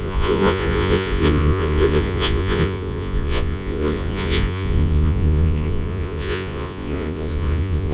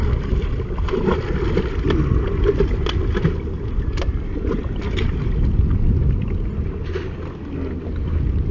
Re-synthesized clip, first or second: first